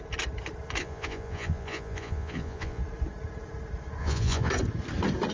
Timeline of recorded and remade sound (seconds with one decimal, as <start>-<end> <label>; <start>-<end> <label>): 0.0-0.8 recorded; 0.8-2.8 remade; 2.8-4.0 recorded; 4.0-4.5 remade; 4.5-5.3 recorded